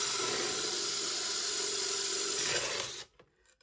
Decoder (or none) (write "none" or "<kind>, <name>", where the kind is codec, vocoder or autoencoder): vocoder, BigVGAN v2